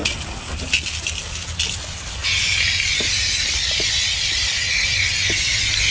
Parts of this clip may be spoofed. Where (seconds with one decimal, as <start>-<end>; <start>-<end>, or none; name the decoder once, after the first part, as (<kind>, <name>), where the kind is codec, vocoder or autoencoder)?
none